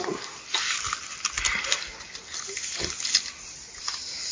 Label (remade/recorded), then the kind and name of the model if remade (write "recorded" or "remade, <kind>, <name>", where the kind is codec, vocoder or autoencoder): recorded